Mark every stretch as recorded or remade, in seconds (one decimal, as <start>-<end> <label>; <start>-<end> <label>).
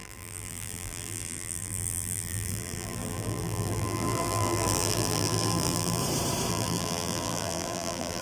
0.0-6.0 remade; 6.0-6.5 recorded; 6.5-8.2 remade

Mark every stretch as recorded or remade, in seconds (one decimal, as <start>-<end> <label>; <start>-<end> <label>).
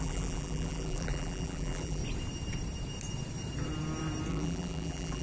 0.0-2.0 remade; 2.0-4.3 recorded; 4.3-5.2 remade